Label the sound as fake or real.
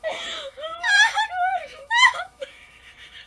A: fake